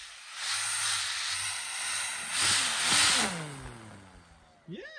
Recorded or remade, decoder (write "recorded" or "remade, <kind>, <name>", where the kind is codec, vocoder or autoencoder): recorded